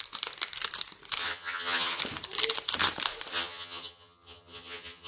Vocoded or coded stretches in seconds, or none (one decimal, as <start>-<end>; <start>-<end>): 1.2-2.0; 3.3-5.1